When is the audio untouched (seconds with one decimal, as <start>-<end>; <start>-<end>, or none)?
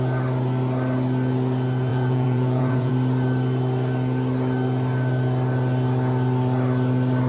0.0-1.9; 2.9-7.3